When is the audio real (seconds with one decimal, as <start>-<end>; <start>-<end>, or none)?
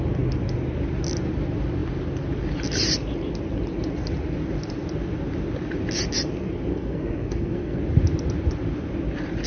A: 0.0-6.7; 7.8-9.5